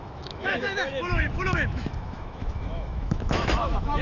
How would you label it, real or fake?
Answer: fake